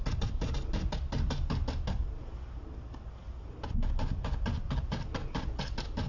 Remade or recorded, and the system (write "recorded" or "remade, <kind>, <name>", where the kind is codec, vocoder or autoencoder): recorded